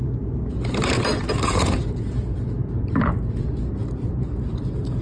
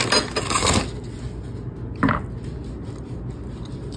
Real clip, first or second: second